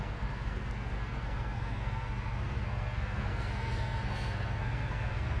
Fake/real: fake